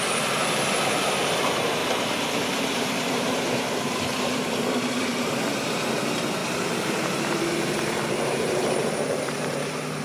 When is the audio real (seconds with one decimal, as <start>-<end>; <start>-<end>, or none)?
1.8-3.1